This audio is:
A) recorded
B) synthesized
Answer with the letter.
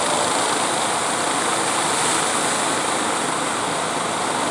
A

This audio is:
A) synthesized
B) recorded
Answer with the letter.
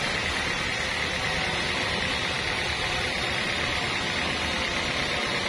B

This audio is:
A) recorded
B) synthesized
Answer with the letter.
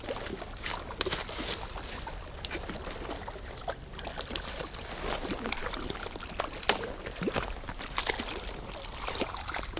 A